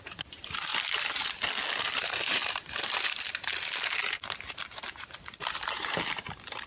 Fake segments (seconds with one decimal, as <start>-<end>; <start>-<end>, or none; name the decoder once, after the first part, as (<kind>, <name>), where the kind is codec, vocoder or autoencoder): 0.0-0.7 (vocoder, BigVGAN v2); 1.8-3.5; 4.5-6.7